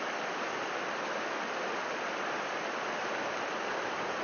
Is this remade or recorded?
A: recorded